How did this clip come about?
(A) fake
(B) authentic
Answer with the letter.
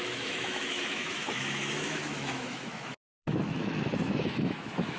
A